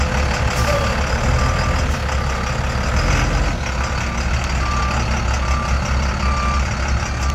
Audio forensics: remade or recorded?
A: recorded